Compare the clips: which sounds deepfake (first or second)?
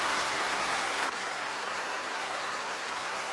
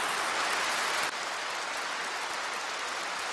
first